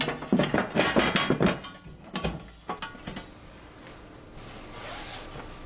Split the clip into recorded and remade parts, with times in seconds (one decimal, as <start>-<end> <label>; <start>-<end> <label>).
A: 0.0-5.7 recorded